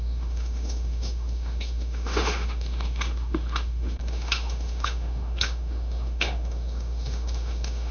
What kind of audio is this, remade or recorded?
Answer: remade